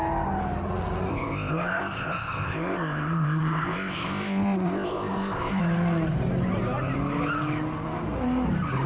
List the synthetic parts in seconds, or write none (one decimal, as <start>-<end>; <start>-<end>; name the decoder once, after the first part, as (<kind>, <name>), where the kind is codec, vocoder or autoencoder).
1.1-5.6 (codec, ZipCodec)